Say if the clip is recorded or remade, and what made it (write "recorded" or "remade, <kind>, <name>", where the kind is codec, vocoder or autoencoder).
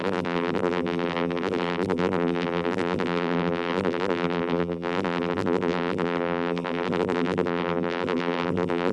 remade, vocoder, BigVGAN v2